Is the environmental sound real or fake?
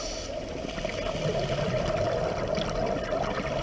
real